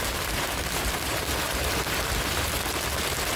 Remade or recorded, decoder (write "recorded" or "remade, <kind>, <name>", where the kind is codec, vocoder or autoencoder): remade, vocoder, BigVGAN v2